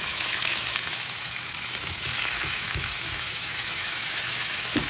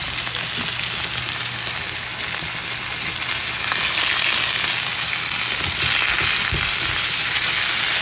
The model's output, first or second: first